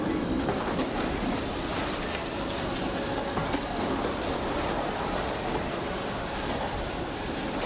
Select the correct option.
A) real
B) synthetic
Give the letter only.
B